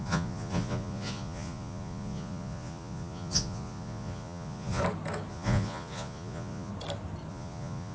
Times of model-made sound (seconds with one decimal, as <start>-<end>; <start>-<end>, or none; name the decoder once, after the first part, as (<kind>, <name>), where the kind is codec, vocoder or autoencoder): 0.0-4.8 (vocoder, Vocos); 5.3-6.7; 7.3-7.9